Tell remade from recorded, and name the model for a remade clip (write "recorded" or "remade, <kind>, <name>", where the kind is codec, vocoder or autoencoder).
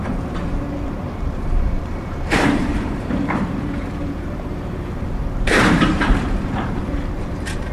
remade, vocoder, BigVGAN v2